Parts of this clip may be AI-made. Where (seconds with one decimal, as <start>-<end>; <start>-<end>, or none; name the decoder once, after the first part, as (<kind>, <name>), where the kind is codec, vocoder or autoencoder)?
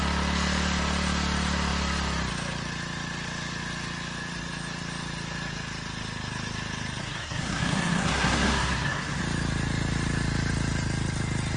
7.0-9.2 (codec, SNAC)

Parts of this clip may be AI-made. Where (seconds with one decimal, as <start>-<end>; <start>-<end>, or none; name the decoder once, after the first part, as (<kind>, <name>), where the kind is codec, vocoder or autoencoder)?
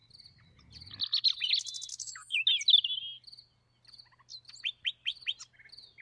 1.9-2.6 (autoencoder, DAC-VAE)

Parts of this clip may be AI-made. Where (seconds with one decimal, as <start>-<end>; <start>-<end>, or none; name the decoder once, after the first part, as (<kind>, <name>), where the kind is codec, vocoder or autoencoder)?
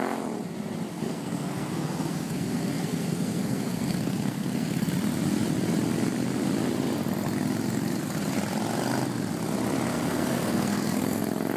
0.9-4.9 (codec, SNAC); 9.9-11.2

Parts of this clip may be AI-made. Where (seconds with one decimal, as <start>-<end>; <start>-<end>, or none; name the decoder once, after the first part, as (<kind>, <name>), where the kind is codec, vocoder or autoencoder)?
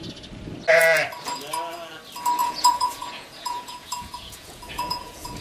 2.4-5.4 (vocoder, Vocos)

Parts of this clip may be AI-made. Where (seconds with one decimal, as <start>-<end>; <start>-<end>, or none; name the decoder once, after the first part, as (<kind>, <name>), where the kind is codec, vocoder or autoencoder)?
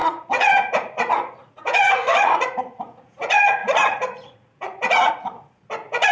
0.0-6.1 (vocoder, Vocos)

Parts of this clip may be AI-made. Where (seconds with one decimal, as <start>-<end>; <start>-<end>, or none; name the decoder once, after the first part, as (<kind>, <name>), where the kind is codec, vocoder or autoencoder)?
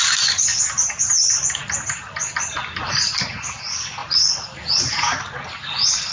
none